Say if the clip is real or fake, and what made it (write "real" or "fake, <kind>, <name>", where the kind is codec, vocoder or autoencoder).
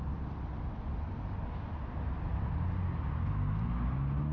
real